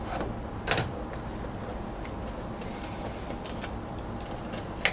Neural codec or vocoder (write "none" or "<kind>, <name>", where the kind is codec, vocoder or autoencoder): none